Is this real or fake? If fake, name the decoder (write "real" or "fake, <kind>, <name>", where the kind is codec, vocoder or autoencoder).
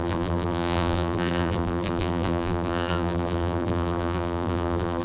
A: fake, vocoder, BigVGAN v2